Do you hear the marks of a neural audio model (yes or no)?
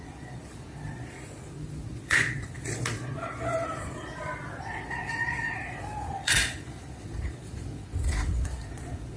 yes